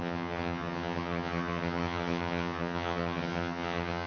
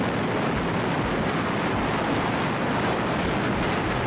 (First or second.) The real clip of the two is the second